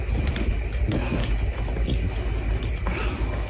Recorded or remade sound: recorded